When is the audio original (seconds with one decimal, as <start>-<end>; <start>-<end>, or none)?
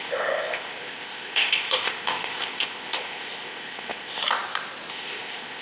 4.2-4.9